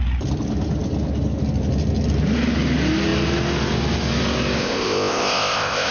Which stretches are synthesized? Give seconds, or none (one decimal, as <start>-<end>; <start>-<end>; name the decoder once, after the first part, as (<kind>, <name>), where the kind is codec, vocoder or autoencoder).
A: 4.6-5.9 (codec, ZipCodec)